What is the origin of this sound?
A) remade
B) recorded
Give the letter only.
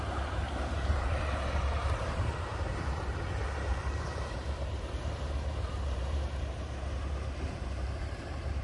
A